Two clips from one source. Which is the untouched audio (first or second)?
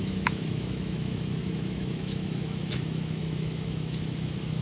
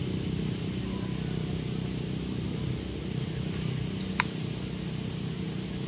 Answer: second